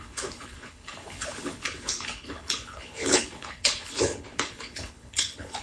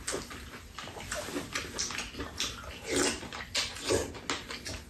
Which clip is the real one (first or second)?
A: second